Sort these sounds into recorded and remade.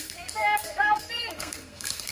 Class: remade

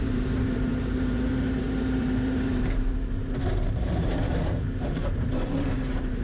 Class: remade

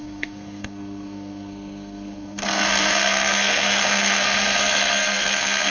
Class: remade